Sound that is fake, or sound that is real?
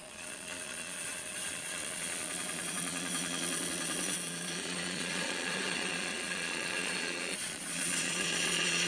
fake